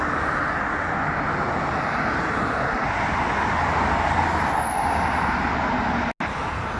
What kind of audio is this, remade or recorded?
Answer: recorded